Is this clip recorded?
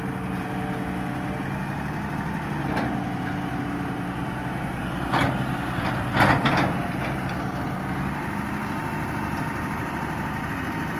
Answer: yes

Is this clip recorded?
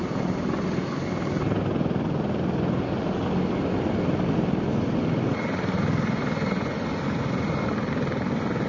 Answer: yes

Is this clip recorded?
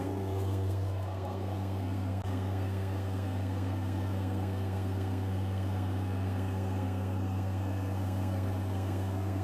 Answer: no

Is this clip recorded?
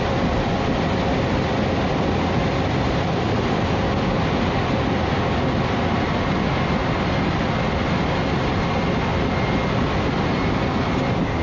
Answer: yes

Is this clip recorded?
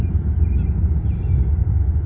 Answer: yes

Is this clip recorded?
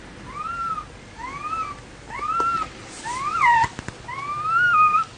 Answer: yes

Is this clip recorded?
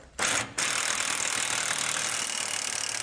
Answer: yes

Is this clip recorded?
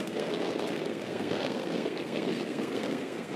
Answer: no